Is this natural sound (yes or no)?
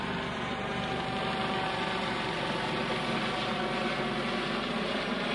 yes